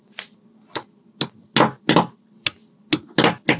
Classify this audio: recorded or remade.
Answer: recorded